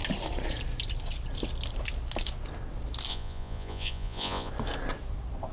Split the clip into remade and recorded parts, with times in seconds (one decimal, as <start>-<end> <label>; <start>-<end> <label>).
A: 0.0-3.1 recorded; 3.1-4.5 remade; 4.5-5.5 recorded